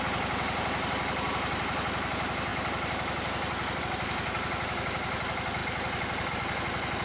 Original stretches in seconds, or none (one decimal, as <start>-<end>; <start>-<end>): 0.0-7.0